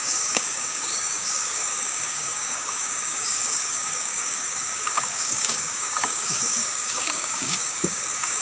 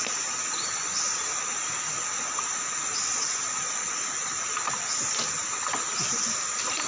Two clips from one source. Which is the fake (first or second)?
first